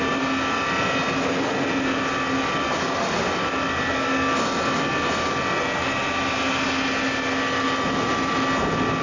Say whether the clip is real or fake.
real